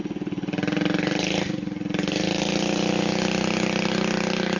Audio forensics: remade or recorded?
recorded